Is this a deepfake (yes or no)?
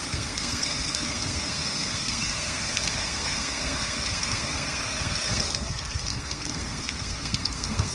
yes